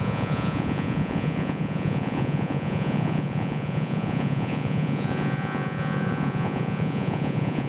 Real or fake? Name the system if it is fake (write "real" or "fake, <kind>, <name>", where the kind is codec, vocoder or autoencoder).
fake, vocoder, Vocos